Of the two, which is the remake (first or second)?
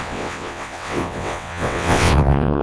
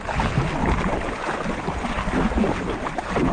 first